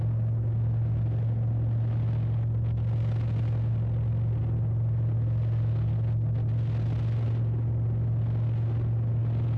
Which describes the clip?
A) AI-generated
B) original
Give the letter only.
B